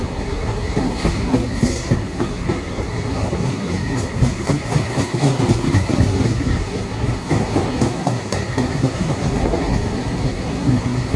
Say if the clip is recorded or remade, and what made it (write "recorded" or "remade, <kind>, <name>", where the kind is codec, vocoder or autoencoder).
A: remade, codec, SNAC